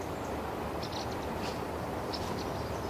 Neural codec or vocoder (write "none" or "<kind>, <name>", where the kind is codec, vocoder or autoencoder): none